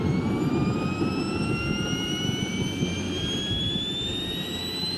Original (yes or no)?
no